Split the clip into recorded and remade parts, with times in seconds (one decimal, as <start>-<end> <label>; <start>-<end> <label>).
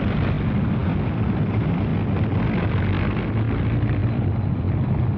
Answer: 0.0-1.9 remade; 1.9-3.6 recorded; 3.6-5.2 remade